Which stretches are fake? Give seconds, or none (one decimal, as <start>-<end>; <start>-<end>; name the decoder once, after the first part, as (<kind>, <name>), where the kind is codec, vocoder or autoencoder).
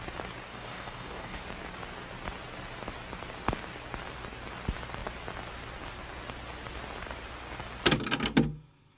0.5-1.4 (codec, DAC)